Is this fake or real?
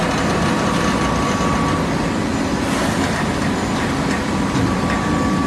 real